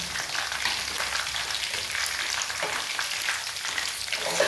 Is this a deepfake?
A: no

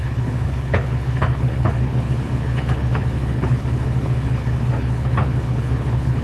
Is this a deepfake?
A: yes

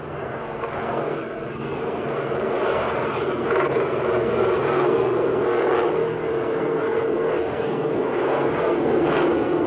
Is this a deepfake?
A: yes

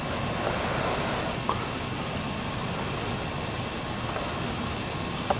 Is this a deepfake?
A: no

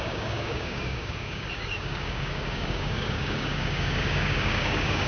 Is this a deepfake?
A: yes